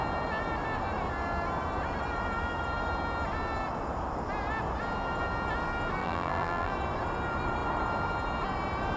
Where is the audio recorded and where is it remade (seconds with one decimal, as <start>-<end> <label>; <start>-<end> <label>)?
0.0-6.0 recorded; 6.0-6.7 remade; 6.7-9.0 recorded